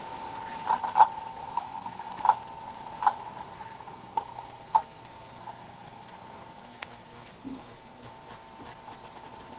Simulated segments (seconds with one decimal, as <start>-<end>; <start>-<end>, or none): 1.4-2.1; 3.5-8.1